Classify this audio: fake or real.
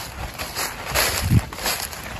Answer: real